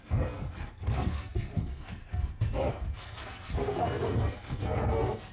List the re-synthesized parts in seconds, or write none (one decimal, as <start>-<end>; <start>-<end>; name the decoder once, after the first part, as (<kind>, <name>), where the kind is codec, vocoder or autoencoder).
0.0-5.3 (codec, SNAC)